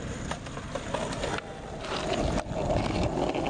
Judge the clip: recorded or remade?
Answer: recorded